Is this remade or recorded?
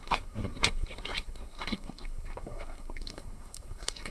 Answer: remade